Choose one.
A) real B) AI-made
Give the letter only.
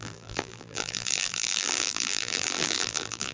B